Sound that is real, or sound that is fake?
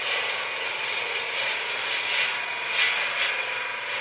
real